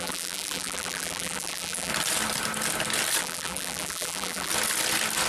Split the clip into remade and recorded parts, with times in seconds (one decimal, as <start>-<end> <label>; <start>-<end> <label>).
0.0-1.9 remade; 1.9-3.2 recorded; 3.2-4.5 remade; 4.5-5.3 recorded